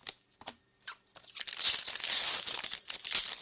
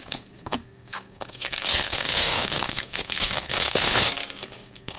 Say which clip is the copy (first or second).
second